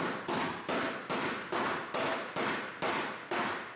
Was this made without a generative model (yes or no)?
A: yes